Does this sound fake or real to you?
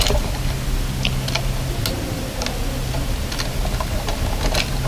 real